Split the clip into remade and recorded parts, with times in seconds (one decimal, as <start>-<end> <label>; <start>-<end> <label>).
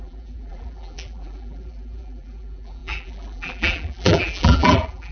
0.0-5.1 remade